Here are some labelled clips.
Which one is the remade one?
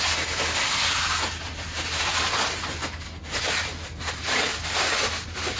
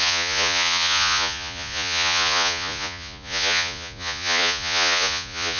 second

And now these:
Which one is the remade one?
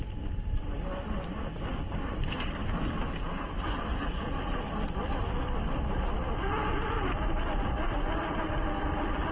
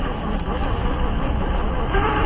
first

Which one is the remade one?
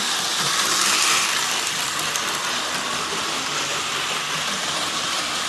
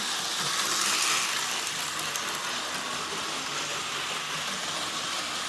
first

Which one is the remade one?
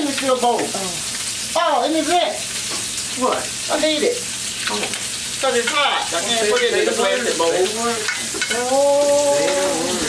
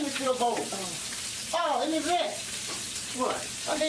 second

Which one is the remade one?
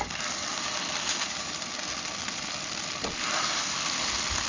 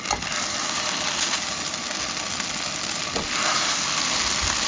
first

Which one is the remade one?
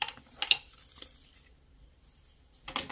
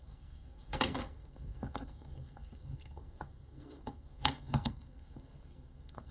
second